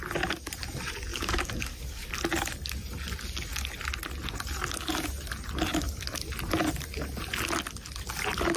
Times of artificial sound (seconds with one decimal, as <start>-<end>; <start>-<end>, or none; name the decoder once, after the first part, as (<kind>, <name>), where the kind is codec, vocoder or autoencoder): 1.1-2.1 (codec, DAC)